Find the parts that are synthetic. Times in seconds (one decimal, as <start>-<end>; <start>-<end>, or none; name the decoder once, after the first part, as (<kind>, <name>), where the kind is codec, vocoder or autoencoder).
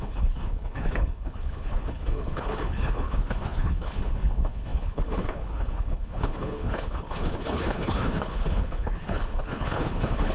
0.0-10.3 (codec, HILCodec)